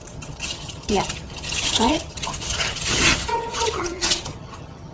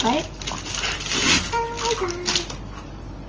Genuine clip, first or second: second